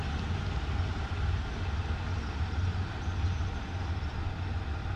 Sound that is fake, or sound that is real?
real